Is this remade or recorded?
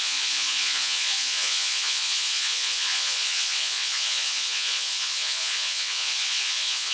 remade